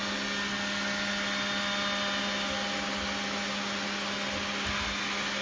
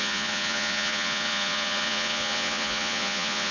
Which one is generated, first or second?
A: second